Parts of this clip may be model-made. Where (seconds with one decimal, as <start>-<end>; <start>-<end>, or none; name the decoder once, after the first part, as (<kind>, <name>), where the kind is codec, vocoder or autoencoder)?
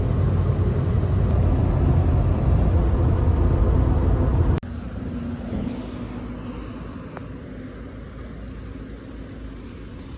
none